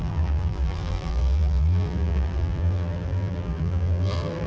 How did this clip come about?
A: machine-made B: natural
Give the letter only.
A